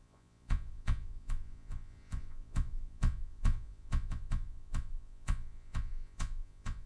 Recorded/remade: remade